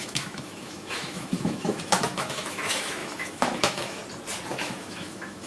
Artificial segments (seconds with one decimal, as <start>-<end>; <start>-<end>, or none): 0.0-4.0; 4.5-5.5